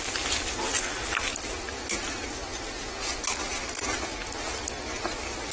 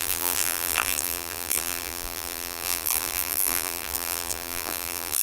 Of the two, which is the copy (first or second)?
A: second